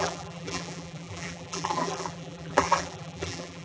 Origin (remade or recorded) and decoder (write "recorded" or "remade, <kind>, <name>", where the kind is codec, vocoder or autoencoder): remade, vocoder, BigVGAN v2